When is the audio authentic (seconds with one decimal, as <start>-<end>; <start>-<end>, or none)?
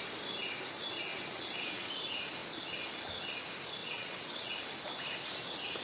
0.0-1.1; 1.9-3.8; 4.6-5.8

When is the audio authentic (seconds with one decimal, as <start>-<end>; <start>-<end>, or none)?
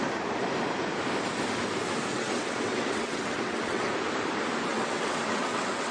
0.0-2.1; 3.9-4.7